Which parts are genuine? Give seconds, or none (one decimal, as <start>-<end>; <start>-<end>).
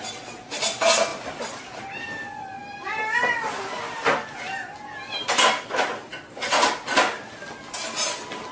0.0-1.1; 1.8-2.6; 3.3-8.5